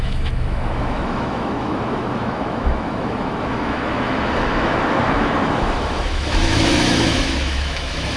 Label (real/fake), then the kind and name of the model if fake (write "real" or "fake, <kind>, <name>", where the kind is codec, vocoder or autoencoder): fake, autoencoder, DAC-VAE